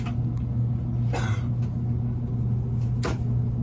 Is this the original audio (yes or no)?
yes